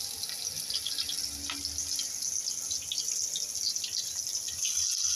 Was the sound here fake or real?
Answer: real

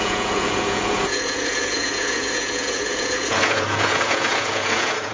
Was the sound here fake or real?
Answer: fake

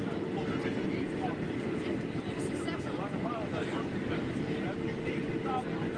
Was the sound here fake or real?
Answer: real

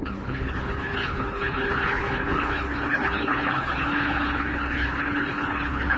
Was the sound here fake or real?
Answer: fake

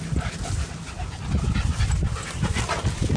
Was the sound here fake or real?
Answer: real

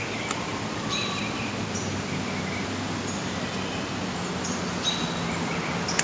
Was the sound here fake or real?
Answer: real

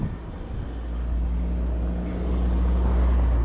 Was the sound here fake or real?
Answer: real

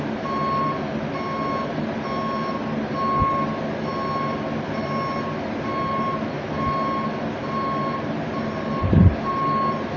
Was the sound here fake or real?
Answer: real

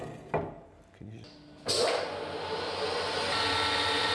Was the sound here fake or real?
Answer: real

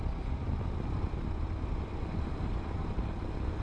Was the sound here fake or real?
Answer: real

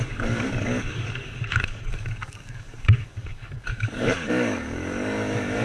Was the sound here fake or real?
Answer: fake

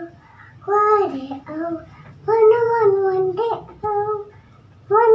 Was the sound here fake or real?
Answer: real